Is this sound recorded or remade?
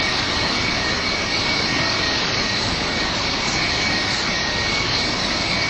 remade